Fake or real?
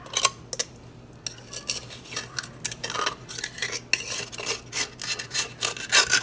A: real